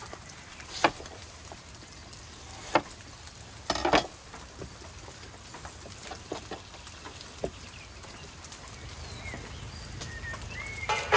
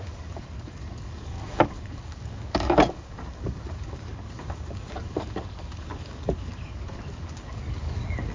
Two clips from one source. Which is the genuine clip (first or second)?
first